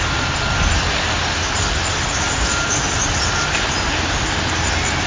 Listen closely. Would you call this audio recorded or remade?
recorded